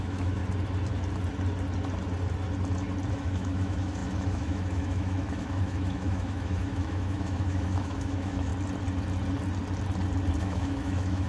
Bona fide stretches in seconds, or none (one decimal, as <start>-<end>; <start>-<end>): 0.4-3.1; 8.5-10.4